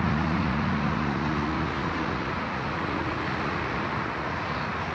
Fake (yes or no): yes